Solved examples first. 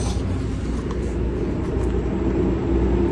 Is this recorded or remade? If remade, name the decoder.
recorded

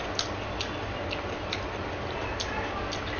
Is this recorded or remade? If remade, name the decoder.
recorded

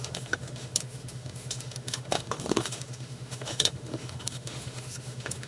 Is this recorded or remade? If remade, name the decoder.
remade, autoencoder, DAC-VAE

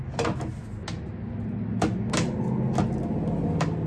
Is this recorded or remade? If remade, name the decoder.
recorded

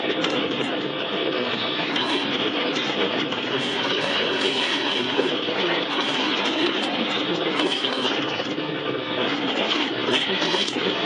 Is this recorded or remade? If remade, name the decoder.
remade, codec, SNAC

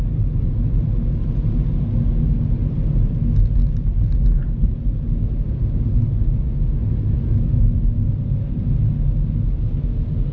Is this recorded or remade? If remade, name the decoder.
recorded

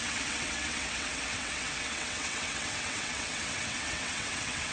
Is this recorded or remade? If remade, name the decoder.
remade, vocoder, WaveNeXt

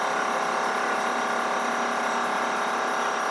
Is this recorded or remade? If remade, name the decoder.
recorded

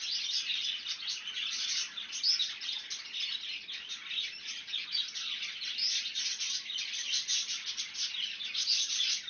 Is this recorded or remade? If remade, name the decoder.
recorded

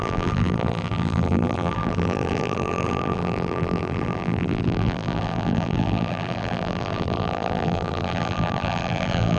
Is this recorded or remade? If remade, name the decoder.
remade, vocoder, BigVGAN v2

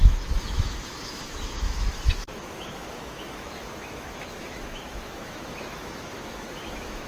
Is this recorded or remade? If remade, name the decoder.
remade, autoencoder, DAC-VAE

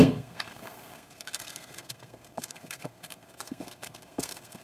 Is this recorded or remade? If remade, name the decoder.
remade, codec, SNAC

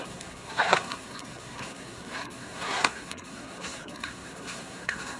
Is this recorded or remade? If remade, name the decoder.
remade, codec, SNAC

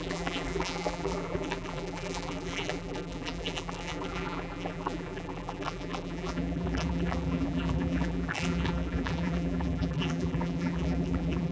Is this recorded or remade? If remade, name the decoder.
remade, vocoder, BigVGAN v2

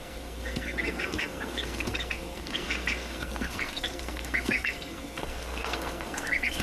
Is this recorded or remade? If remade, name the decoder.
remade, codec, SNAC